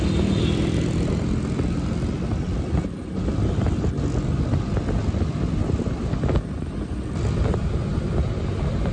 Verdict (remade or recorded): recorded